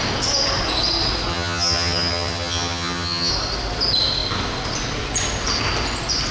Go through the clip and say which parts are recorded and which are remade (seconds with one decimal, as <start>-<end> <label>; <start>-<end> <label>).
0.0-1.3 recorded; 1.3-3.3 remade; 3.3-6.3 recorded